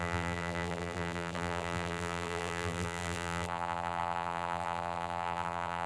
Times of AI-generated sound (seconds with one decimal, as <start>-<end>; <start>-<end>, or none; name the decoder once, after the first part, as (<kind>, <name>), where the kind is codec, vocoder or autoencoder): 0.0-5.9 (vocoder, BigVGAN v2)